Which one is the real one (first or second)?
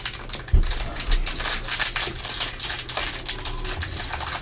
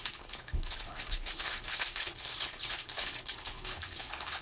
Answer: first